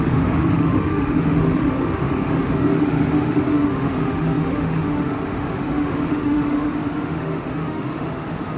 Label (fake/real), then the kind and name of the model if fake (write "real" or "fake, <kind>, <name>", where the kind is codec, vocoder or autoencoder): fake, autoencoder, DAC-VAE